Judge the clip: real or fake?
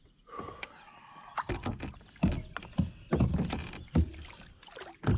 real